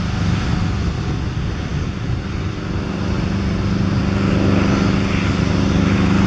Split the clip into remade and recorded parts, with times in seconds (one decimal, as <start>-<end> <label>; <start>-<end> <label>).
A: 0.0-6.3 recorded